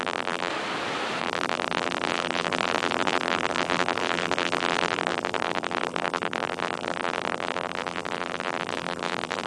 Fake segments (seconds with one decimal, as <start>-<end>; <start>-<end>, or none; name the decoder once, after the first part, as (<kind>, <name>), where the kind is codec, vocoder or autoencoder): 0.0-0.5 (vocoder, BigVGAN v2); 1.2-9.5